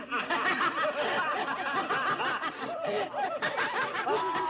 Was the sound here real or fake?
real